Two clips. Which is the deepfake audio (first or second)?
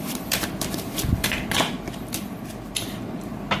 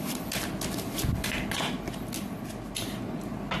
first